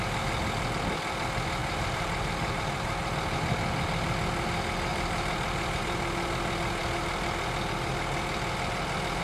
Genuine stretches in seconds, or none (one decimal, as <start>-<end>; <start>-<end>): 0.0-1.6; 3.1-4.9; 5.8-9.2